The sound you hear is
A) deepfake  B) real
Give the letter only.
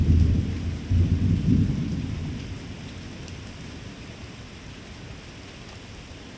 B